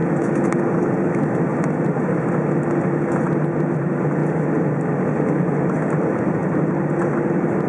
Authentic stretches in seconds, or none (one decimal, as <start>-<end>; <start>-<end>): 0.0-0.6; 1.5-3.5